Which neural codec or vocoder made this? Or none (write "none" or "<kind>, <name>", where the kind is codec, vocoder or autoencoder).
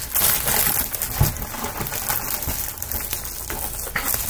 none